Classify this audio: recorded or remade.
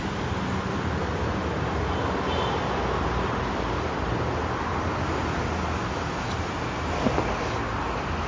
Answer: recorded